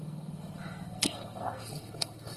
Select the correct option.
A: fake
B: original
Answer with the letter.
A